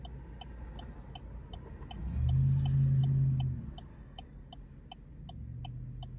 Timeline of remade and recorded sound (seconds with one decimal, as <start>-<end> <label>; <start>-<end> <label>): 0.0-3.9 recorded; 3.9-4.4 remade; 4.4-6.2 recorded